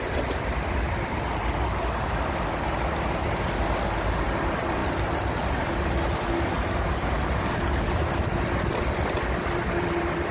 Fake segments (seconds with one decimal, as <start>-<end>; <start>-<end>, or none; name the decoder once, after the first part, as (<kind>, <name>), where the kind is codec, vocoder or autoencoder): none